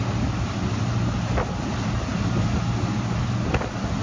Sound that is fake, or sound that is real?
real